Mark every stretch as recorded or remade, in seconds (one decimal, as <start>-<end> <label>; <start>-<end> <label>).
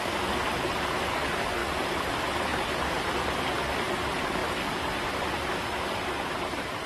0.0-2.5 recorded; 2.5-3.2 remade; 3.2-6.9 recorded